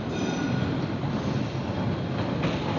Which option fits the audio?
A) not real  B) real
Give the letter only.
B